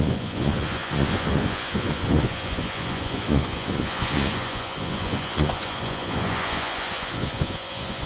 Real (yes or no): no